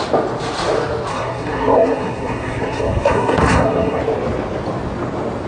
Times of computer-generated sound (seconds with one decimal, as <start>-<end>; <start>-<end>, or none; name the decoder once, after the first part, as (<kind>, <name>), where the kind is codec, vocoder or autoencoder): 1.1-4.0 (codec, SNAC)